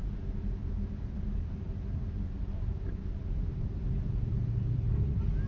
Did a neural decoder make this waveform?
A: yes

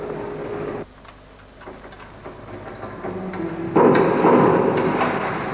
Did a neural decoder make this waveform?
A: no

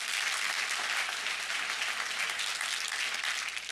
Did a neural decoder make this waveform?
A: no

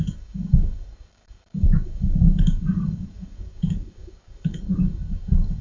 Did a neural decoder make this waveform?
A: yes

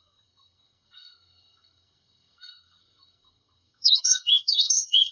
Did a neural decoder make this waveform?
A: yes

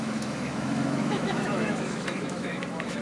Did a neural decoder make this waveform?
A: yes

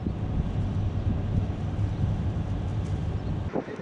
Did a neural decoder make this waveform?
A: no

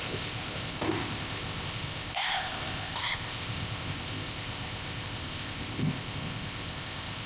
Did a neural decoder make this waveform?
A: yes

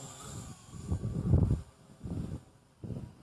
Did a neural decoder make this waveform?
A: no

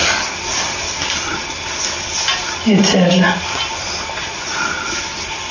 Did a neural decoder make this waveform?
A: no